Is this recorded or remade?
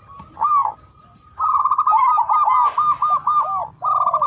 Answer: recorded